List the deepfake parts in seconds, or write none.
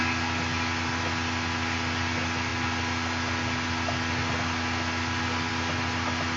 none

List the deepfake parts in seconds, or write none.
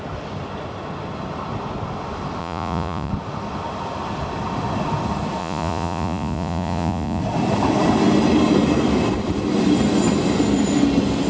2.4-3.1 (vocoder, Vocos); 5.4-7.2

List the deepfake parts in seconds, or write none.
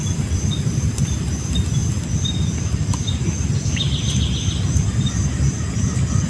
none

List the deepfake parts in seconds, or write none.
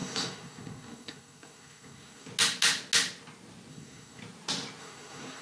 0.0-2.3 (codec, SNAC); 3.7-4.2; 4.8-5.4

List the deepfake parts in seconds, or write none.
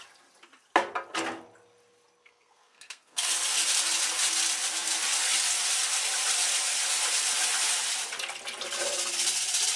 2.2-3.3 (codec, SNAC)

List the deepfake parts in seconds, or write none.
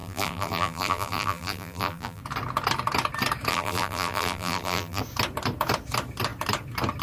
0.0-2.2 (vocoder, BigVGAN v2); 3.5-5.0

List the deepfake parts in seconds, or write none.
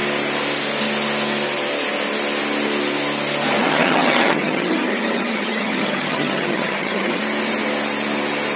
3.6-7.2 (vocoder, HiFi-GAN)